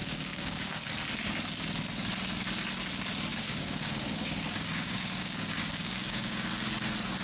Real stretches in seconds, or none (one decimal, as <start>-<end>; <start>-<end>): 0.9-3.3; 6.5-7.2

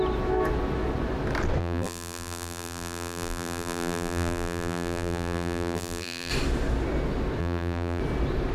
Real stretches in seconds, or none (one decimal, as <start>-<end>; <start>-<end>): 0.0-1.6; 6.3-7.4; 8.0-8.5

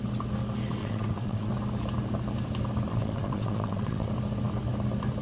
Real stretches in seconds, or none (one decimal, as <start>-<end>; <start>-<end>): 0.0-0.8; 1.5-2.9; 4.1-5.2